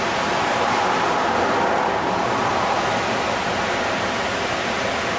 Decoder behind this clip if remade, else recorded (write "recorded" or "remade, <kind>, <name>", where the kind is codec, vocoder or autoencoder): recorded